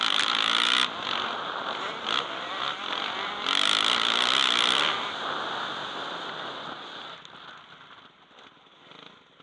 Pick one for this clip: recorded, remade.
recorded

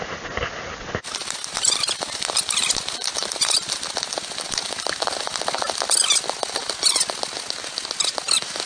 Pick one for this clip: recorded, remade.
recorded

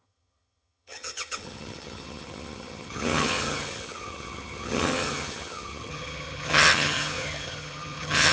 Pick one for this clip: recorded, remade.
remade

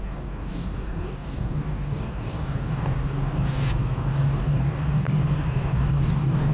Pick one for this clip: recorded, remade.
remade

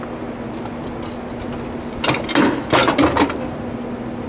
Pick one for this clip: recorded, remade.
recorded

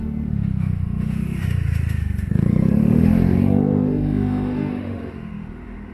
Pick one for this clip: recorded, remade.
remade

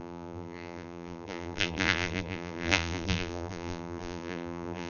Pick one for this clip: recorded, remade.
remade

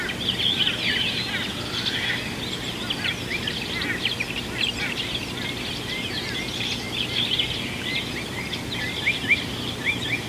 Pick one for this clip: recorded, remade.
recorded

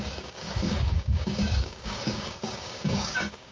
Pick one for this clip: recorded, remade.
remade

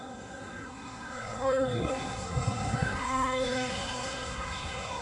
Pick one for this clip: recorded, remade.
remade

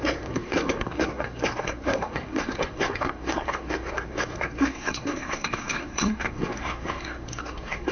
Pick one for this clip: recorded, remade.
remade